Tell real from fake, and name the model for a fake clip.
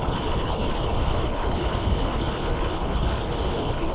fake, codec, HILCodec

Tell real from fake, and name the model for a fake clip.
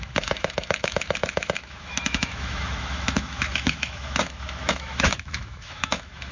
fake, autoencoder, DAC-VAE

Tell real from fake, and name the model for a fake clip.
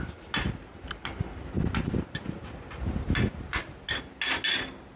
real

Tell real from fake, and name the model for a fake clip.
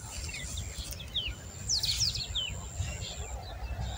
real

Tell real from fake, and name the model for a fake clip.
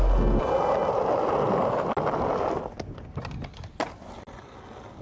real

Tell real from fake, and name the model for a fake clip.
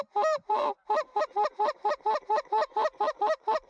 fake, vocoder, BigVGAN v2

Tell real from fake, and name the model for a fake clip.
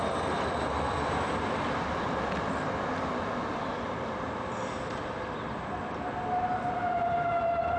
real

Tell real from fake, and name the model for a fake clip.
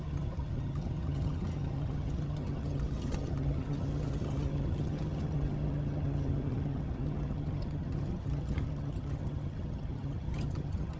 fake, vocoder, HiFi-GAN